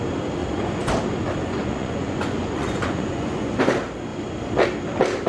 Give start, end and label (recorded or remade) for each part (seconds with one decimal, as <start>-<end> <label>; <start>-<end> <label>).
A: 0.0-0.4 recorded; 0.4-0.9 remade; 0.9-1.4 recorded; 1.4-3.6 remade; 3.6-5.3 recorded